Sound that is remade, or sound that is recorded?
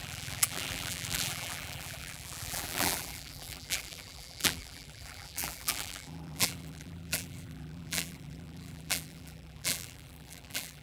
remade